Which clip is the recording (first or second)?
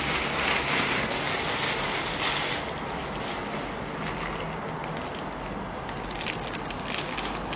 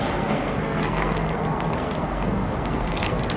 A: first